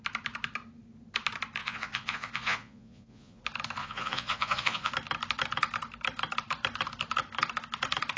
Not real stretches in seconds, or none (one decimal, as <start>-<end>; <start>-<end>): 1.6-3.4; 3.8-4.9